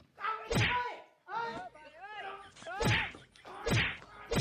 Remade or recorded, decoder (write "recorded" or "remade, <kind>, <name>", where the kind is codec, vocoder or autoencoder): recorded